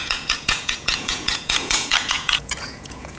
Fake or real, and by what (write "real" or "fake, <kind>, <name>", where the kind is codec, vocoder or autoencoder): fake, vocoder, Vocos